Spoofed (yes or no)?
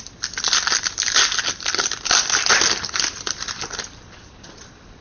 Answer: no